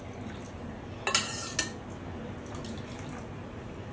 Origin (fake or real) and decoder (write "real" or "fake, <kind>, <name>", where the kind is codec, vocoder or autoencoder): real